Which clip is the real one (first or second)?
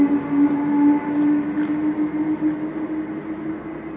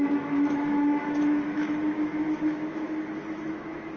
first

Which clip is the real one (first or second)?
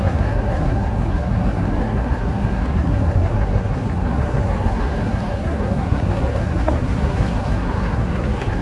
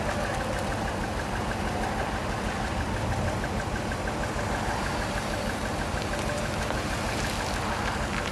second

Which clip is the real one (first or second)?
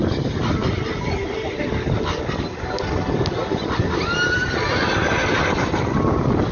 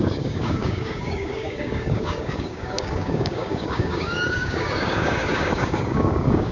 first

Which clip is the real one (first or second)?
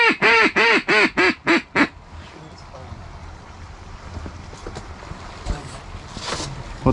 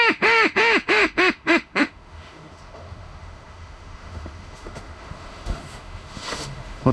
first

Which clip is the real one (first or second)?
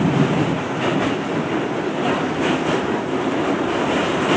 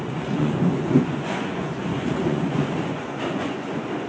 first